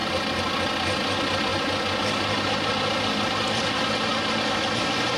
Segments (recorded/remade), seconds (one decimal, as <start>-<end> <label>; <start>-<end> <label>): 0.0-5.2 recorded